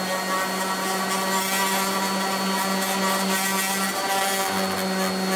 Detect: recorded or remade recorded